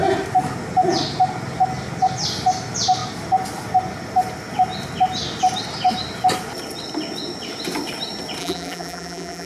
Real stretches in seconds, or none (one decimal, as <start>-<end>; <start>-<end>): 0.0-8.4